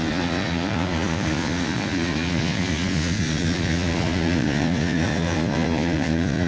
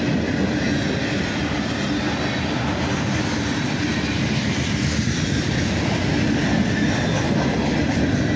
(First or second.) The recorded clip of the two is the second